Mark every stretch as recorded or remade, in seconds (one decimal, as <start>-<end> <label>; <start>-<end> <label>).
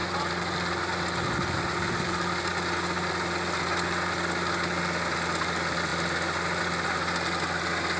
0.0-2.1 remade; 2.1-8.0 recorded